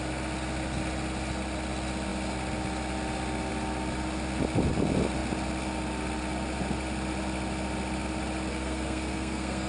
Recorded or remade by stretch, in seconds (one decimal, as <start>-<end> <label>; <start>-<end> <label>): 0.0-8.5 recorded; 8.5-9.7 remade

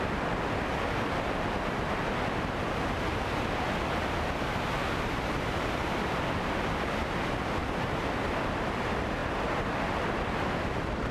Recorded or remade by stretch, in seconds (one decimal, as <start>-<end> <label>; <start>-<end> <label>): 0.0-11.1 recorded

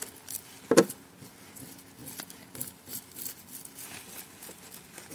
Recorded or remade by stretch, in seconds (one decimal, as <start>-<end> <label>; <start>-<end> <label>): 0.0-5.1 recorded

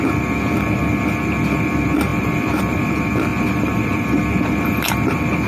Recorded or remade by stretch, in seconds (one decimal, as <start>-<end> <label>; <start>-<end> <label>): 0.0-2.1 recorded; 2.1-2.9 remade; 2.9-3.3 recorded; 3.3-4.2 remade; 4.2-5.5 recorded

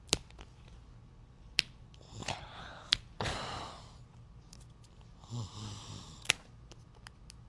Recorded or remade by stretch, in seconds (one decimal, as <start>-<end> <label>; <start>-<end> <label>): 0.0-7.5 recorded